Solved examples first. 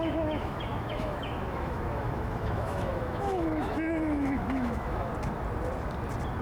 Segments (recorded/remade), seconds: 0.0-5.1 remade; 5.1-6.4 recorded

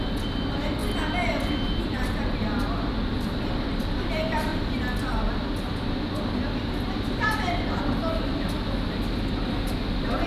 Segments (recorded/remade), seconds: 0.0-10.3 recorded